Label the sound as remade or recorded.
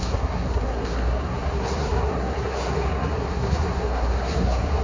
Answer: remade